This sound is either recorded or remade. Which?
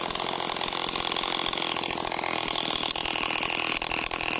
recorded